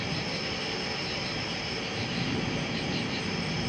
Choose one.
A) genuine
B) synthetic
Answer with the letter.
B